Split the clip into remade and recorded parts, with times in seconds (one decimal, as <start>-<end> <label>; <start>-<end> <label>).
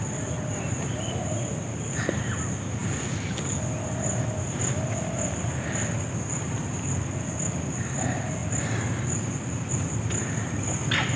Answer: 0.0-11.2 recorded